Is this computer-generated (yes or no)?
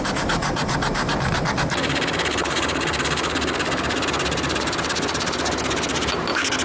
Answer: no